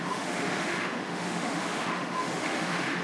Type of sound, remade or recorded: remade